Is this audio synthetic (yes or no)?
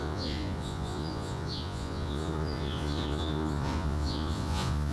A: yes